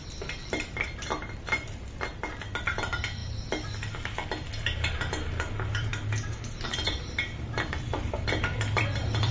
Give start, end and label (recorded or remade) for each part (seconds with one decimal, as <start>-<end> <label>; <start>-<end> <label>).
0.0-3.2 remade; 3.2-5.0 recorded; 5.0-5.9 remade; 5.9-6.6 recorded; 6.6-9.3 remade